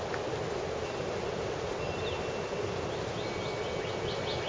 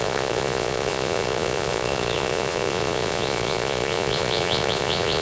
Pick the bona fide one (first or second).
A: first